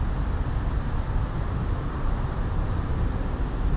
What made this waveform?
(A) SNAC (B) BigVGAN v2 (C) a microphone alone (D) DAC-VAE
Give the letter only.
C